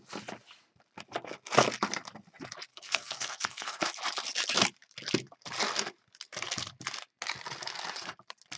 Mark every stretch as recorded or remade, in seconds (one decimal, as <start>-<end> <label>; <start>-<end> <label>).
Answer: 0.0-2.7 recorded; 2.7-3.8 remade; 3.8-8.6 recorded